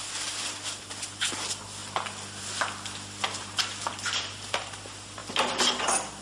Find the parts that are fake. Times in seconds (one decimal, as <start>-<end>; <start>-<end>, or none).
none